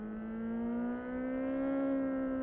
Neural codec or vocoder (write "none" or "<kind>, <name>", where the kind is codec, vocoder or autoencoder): none